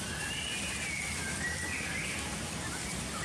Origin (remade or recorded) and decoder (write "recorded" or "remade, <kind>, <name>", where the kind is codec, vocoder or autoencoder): recorded